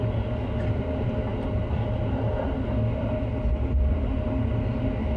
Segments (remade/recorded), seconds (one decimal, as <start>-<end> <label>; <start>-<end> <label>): 0.0-5.2 recorded